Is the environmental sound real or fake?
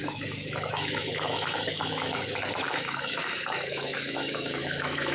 fake